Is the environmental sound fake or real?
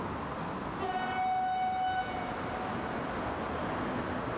real